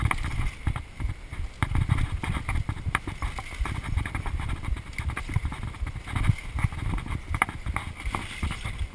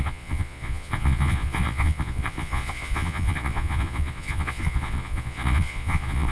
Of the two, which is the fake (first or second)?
second